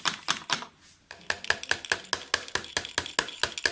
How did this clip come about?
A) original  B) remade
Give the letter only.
A